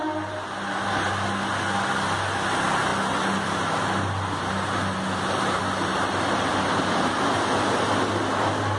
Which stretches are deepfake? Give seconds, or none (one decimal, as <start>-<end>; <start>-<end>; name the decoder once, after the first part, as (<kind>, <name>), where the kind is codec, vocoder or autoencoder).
none